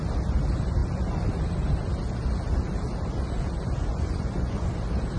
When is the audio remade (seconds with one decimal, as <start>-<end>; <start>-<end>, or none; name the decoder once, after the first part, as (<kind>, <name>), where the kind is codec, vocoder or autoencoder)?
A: 3.9-4.7 (vocoder, Vocos)